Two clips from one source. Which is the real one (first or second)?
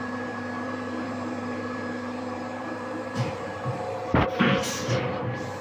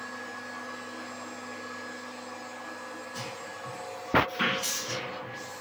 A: second